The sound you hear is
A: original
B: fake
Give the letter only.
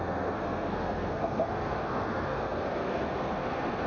B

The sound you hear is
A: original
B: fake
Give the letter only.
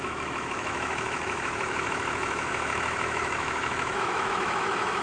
B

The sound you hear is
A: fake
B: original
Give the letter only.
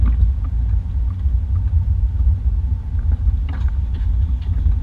B